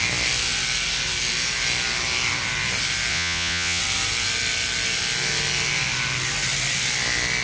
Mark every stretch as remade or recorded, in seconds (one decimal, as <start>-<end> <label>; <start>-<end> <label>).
0.0-3.1 recorded; 3.1-3.8 remade; 3.8-7.4 recorded